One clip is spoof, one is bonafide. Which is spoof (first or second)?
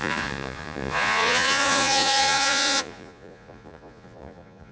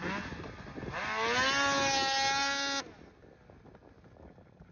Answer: first